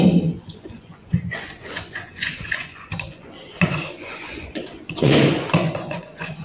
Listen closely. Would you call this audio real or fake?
fake